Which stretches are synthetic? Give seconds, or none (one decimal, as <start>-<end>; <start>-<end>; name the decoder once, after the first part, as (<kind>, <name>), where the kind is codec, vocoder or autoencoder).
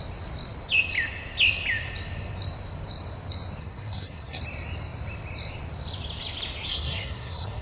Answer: 3.6-4.4 (codec, SNAC); 6.7-7.6